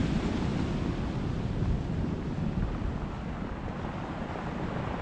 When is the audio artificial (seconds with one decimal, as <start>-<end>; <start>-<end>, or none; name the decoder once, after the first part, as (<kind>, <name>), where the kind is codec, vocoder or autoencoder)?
none